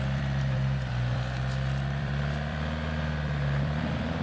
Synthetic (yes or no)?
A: yes